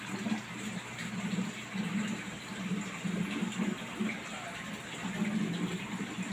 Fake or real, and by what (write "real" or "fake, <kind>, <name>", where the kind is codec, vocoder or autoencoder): real